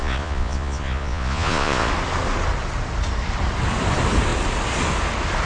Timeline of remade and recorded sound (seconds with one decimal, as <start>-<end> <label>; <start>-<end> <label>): 0.0-1.9 remade; 1.9-5.5 recorded